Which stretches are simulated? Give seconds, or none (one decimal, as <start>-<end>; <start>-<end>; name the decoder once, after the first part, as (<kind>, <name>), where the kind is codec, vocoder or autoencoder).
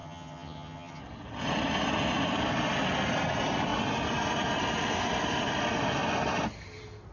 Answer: 0.0-1.0 (vocoder, HiFi-GAN)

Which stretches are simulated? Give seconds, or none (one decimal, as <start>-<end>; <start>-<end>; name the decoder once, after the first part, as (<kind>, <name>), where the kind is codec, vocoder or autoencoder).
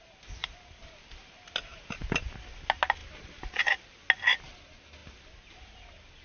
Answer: 0.4-1.0 (vocoder, BigVGAN v2)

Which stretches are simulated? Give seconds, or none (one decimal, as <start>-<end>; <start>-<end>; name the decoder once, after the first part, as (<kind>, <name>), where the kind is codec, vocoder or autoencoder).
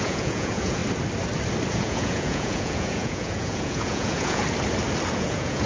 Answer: 0.0-0.8 (vocoder, Vocos); 1.7-4.4; 5.1-5.7